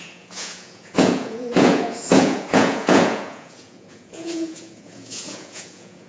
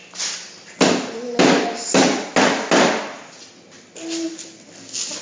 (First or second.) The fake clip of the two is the first